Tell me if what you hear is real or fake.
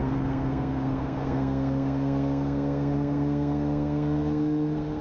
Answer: fake